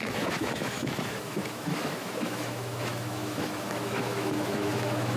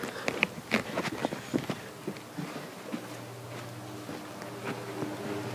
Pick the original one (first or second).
second